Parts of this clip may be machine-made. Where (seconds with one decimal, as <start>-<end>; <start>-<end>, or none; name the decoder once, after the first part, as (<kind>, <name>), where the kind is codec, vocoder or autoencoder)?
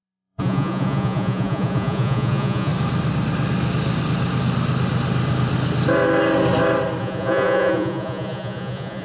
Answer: 0.0-2.7 (vocoder, Vocos); 7.0-9.0